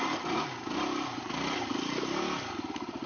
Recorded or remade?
recorded